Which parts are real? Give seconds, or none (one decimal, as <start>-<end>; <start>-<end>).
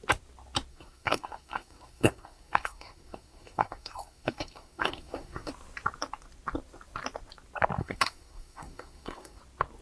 0.0-0.7; 5.5-7.8; 9.4-9.8